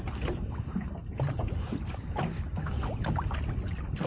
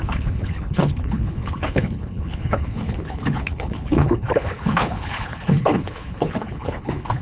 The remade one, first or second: second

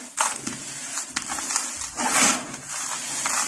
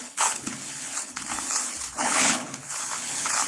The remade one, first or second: second